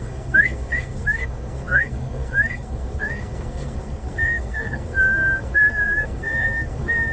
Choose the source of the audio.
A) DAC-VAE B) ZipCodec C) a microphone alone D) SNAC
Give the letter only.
D